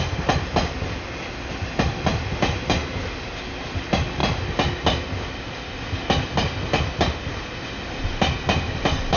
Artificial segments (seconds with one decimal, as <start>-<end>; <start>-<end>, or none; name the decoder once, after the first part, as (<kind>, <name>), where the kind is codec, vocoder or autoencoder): none